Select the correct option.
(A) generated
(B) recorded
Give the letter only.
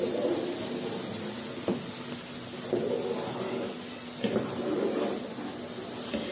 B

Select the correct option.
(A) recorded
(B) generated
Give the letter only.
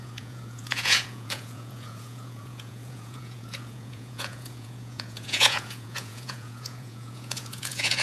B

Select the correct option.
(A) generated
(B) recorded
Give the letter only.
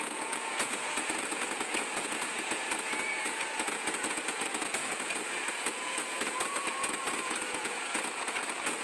A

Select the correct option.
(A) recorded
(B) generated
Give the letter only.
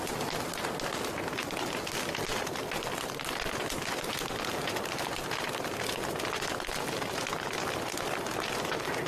A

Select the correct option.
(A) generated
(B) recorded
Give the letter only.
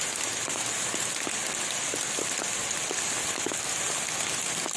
B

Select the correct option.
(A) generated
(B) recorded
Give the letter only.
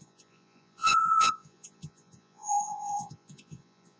A